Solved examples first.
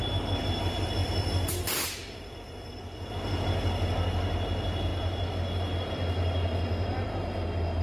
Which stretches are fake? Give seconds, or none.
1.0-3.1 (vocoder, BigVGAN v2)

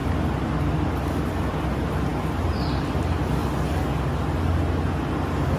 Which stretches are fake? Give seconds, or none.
0.0-3.4 (vocoder, BigVGAN v2); 5.1-5.6

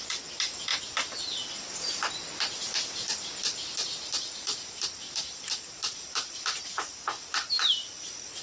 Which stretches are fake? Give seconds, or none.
0.0-0.7 (vocoder, BigVGAN v2); 2.6-6.6; 7.5-8.4

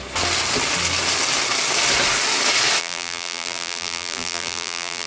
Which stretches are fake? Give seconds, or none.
2.8-5.1 (vocoder, BigVGAN v2)

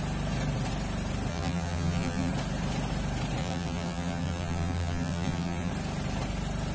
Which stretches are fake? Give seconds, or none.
1.3-2.3 (vocoder, BigVGAN v2); 3.4-5.7

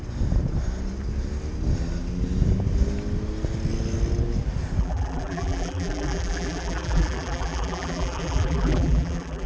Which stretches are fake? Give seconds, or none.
4.8-9.5 (vocoder, BigVGAN v2)